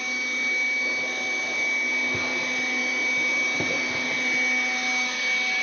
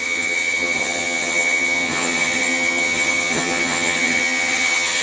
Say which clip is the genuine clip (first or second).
first